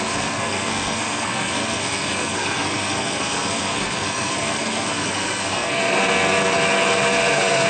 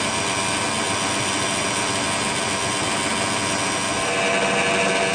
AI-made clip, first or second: first